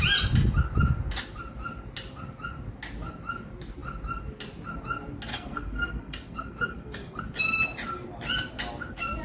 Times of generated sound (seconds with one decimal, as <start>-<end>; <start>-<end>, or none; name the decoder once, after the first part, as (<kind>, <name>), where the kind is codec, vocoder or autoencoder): 5.3-7.2 (codec, SNAC)